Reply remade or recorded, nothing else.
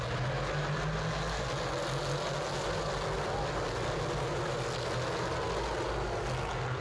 recorded